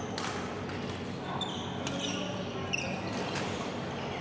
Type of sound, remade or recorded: recorded